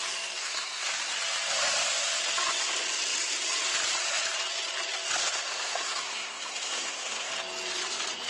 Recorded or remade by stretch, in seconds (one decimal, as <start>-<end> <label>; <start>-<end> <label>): 0.0-0.4 recorded; 0.4-0.9 remade; 0.9-5.2 recorded; 5.2-7.3 remade; 7.3-8.3 recorded